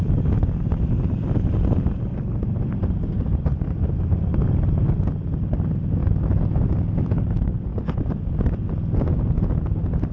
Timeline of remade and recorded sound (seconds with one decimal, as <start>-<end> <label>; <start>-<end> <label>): 0.0-2.1 recorded; 2.1-4.3 remade; 4.3-7.7 recorded; 7.7-8.3 remade; 8.3-10.1 recorded